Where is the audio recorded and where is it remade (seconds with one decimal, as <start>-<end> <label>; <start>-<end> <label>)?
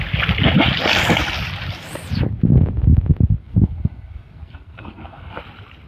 0.0-3.4 recorded; 3.4-5.4 remade; 5.4-5.9 recorded